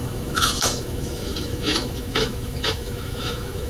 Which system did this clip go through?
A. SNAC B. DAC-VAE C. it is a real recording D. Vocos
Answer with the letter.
B